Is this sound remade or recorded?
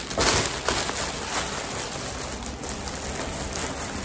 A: recorded